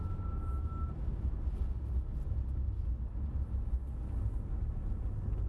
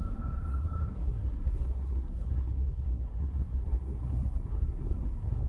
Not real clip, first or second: second